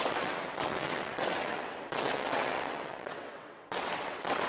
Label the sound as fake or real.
fake